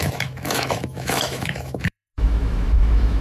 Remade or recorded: remade